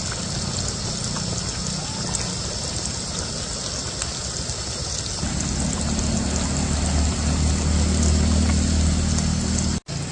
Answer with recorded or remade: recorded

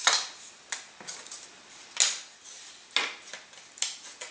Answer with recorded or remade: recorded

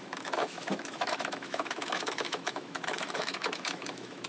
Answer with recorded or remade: remade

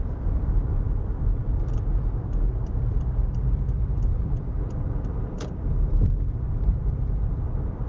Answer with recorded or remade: remade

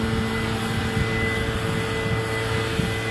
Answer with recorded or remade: recorded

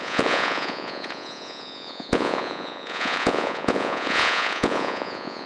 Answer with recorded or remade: remade